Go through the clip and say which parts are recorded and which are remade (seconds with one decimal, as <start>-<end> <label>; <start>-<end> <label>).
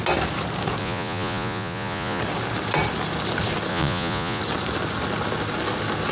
0.0-0.8 recorded; 0.8-2.2 remade; 2.2-3.7 recorded; 3.7-4.4 remade; 4.4-6.1 recorded